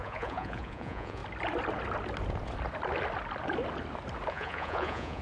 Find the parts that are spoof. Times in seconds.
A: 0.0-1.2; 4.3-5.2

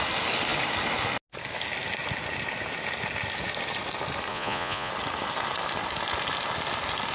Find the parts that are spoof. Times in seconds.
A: 4.3-4.9

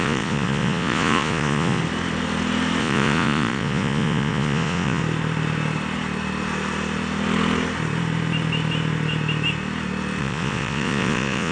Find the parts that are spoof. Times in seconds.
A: 0.0-1.8; 2.8-5.0; 10.2-11.5

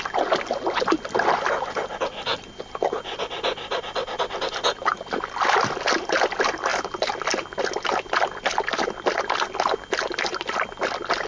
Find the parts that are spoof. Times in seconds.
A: none

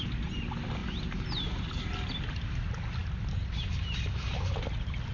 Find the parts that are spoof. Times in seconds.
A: none

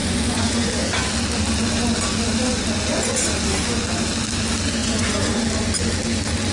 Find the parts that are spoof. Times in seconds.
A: 0.0-0.7; 4.8-5.4

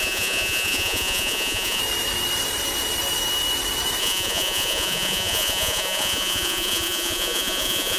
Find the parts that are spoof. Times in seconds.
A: 0.0-1.8; 4.0-8.0

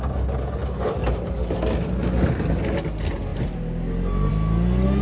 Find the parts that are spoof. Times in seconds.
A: none